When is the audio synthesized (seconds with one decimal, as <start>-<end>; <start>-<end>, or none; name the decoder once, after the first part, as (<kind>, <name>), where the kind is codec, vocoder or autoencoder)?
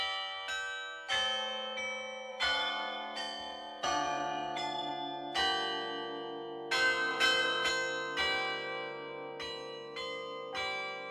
2.3-4.9 (vocoder, Vocos); 7.1-7.7